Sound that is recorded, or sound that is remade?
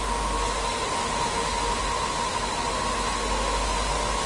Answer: recorded